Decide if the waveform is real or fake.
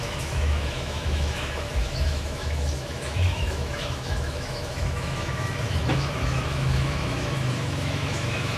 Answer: fake